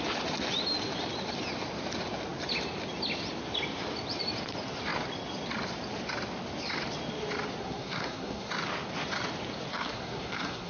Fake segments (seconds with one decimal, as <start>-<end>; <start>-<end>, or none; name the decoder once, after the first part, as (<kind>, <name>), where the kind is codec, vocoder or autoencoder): 7.6-8.5 (codec, SNAC); 9.7-10.7